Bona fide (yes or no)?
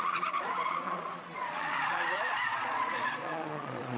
no